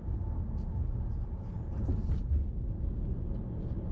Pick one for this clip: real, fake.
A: real